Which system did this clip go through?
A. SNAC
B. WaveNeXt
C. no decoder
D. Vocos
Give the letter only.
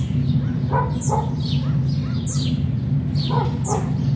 C